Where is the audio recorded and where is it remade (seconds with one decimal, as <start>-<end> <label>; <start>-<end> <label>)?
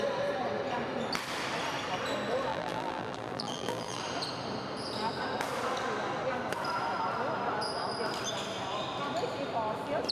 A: 0.0-2.5 recorded; 2.5-4.0 remade; 4.0-10.1 recorded